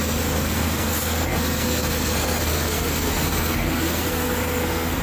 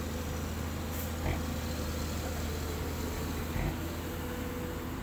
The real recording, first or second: second